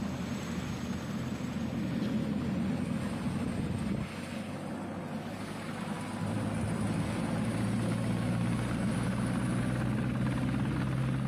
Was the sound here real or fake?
real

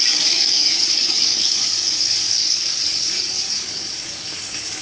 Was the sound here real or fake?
fake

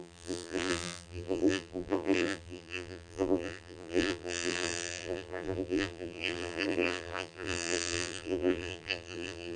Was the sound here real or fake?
fake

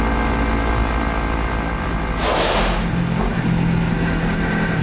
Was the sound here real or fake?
real